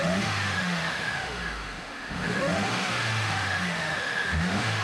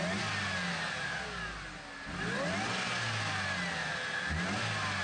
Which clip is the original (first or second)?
second